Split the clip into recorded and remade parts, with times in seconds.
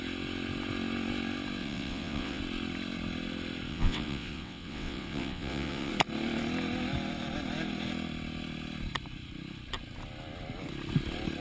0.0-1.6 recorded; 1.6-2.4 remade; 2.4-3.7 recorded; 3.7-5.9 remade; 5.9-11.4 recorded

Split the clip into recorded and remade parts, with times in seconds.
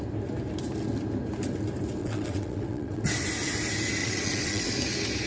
0.0-2.0 recorded; 2.0-3.0 remade; 3.0-4.0 recorded; 4.0-4.7 remade; 4.7-5.3 recorded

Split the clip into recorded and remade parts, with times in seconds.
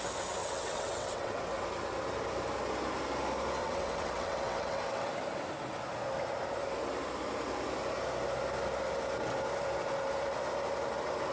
0.0-0.4 recorded; 0.4-1.4 remade; 1.4-3.6 recorded; 3.6-5.1 remade; 5.1-11.3 recorded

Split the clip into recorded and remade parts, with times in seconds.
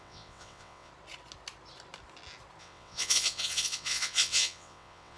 0.0-0.9 remade; 0.9-2.6 recorded; 2.6-5.2 remade